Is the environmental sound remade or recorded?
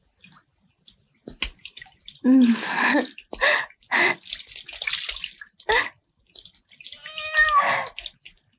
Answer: recorded